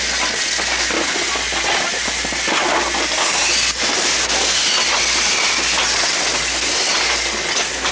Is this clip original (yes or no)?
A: yes